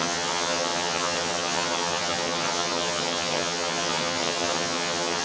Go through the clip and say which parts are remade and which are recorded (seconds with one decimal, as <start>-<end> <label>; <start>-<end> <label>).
0.0-5.2 remade

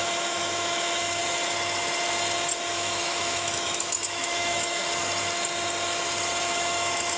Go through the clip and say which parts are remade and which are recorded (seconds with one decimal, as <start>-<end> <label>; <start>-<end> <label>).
0.0-1.2 remade; 1.2-2.7 recorded; 2.7-4.8 remade; 4.8-6.4 recorded; 6.4-7.2 remade

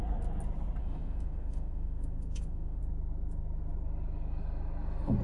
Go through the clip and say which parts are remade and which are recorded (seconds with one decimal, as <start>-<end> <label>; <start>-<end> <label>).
0.0-0.8 recorded; 0.8-2.8 remade; 2.8-5.2 recorded

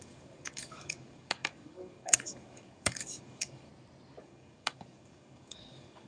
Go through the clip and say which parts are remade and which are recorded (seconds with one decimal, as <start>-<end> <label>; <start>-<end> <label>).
0.0-3.7 remade; 3.7-4.2 recorded; 4.2-6.1 remade

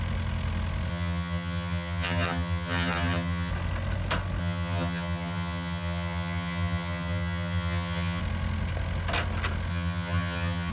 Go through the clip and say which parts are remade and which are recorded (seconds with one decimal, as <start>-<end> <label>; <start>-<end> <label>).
0.0-0.9 recorded; 0.9-3.5 remade; 3.5-4.4 recorded; 4.4-8.2 remade; 8.2-9.7 recorded; 9.7-10.7 remade

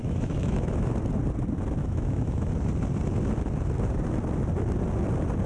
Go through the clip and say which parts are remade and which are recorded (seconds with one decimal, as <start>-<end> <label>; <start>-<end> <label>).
0.0-0.9 remade; 0.9-1.8 recorded; 1.8-2.5 remade; 2.5-5.5 recorded

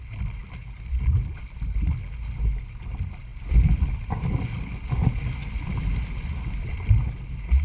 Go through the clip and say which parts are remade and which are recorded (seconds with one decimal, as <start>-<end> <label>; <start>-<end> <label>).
0.0-7.6 recorded

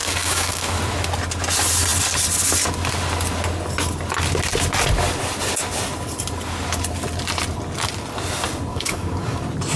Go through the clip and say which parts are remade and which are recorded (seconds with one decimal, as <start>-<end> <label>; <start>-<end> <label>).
0.0-0.8 remade; 0.8-8.7 recorded; 8.7-9.4 remade; 9.4-9.8 recorded